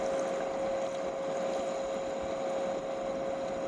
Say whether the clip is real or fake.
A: real